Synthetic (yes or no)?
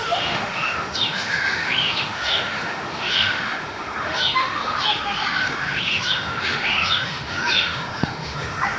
yes